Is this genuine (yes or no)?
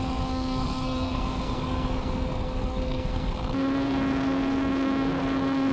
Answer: no